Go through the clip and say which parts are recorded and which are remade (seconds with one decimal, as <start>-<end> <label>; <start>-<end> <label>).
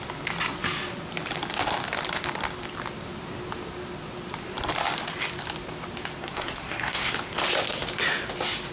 0.0-6.2 recorded; 6.2-7.1 remade; 7.1-8.7 recorded